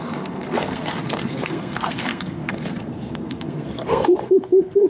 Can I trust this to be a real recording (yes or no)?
no